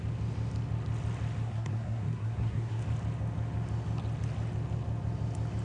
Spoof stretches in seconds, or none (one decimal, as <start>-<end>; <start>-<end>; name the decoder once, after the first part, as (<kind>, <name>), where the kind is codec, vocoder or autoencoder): 1.4-2.8 (codec, SNAC)

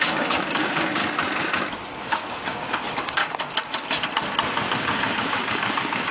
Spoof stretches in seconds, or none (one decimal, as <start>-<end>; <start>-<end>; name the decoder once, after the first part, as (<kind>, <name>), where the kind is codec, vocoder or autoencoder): 0.0-1.0 (codec, DAC); 2.0-3.2; 4.7-6.1

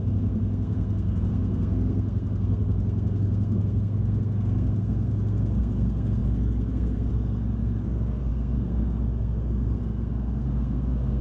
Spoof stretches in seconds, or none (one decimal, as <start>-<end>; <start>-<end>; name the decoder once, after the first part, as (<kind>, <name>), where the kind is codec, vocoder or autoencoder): 0.0-11.2 (codec, SNAC)

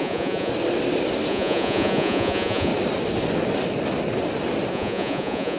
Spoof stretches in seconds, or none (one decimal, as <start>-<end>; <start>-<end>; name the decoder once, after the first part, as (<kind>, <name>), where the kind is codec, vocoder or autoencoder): 0.0-0.5 (vocoder, Vocos); 1.3-2.7; 4.7-5.6

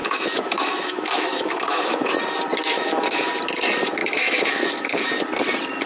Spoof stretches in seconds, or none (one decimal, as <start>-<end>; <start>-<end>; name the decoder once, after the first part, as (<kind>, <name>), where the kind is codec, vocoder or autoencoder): 0.0-2.1 (autoencoder, DAC-VAE); 2.7-3.3; 4.0-5.1

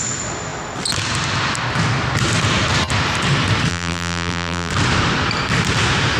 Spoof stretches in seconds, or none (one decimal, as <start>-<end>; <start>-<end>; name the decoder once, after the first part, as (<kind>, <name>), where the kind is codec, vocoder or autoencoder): 3.7-4.7 (vocoder, BigVGAN v2)

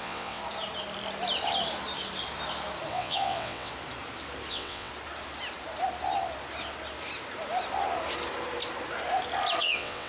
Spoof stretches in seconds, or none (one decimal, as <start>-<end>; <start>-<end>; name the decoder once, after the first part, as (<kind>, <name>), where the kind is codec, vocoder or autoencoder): 0.0-0.4 (vocoder, WaveNeXt); 2.9-3.7; 4.5-4.9; 9.6-10.1

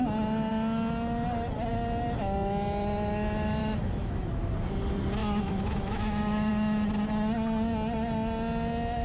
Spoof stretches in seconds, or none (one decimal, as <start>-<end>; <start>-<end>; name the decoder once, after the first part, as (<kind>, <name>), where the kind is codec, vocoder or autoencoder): 3.6-4.5 (autoencoder, DAC-VAE); 5.2-6.5